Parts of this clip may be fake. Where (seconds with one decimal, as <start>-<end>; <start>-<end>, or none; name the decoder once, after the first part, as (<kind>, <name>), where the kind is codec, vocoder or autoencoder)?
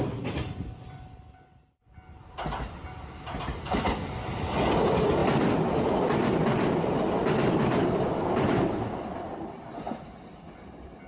none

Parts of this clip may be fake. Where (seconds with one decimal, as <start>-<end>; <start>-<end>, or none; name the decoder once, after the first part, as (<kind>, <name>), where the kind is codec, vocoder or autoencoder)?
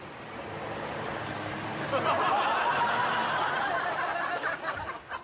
none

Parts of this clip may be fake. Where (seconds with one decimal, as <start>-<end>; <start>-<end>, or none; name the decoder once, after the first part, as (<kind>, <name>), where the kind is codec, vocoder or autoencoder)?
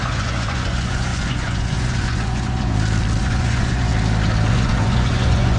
0.0-2.7 (vocoder, Vocos); 3.2-3.9; 4.5-5.6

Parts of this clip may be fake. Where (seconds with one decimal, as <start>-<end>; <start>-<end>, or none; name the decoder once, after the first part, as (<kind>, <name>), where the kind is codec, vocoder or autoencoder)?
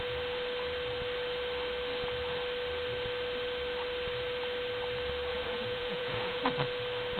5.3-6.4 (vocoder, Vocos)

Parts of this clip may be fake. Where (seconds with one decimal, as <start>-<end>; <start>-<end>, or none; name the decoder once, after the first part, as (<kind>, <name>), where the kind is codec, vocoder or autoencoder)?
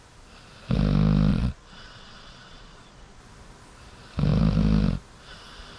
1.3-3.2 (vocoder, Vocos)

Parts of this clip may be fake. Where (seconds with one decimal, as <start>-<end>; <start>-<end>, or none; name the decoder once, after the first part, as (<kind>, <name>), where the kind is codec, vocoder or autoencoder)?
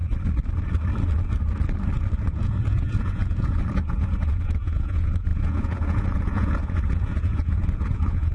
2.2-8.3 (vocoder, Vocos)